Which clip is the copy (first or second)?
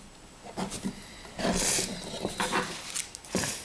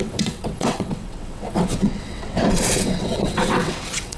second